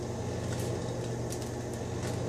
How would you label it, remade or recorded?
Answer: recorded